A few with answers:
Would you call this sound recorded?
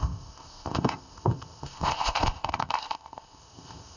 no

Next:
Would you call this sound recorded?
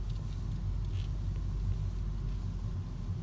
yes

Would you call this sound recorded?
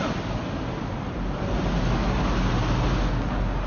yes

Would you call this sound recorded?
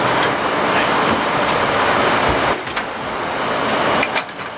yes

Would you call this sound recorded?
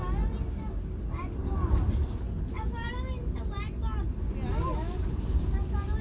yes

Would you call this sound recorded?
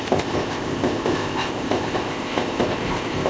no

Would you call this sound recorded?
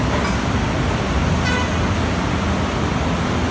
yes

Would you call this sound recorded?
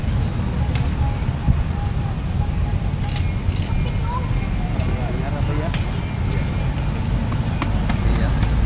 yes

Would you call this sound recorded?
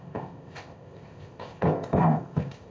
no